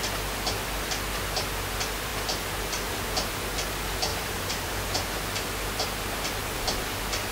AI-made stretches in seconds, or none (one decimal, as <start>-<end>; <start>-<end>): 4.1-5.1